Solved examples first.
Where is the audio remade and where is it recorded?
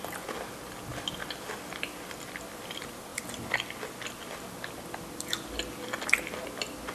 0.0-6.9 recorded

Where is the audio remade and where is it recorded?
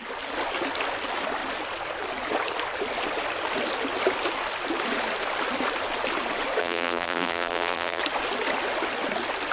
0.0-6.6 recorded; 6.6-8.0 remade; 8.0-9.5 recorded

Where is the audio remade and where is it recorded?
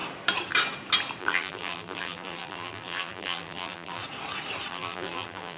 0.0-1.2 recorded; 1.2-4.0 remade; 4.0-4.7 recorded; 4.7-5.6 remade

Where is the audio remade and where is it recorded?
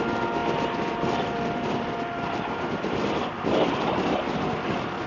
0.0-0.4 recorded; 0.4-3.5 remade; 3.5-5.1 recorded